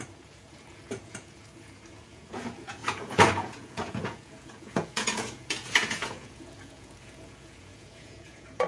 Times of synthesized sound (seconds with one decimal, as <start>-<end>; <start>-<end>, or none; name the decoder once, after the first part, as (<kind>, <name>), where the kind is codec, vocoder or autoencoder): 0.0-8.7 (vocoder, Vocos)